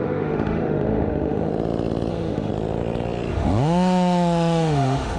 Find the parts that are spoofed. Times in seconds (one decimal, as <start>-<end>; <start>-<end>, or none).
0.0-1.5; 2.1-2.5; 3.3-5.2